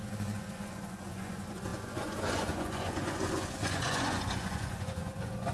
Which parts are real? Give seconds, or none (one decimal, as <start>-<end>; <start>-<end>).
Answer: none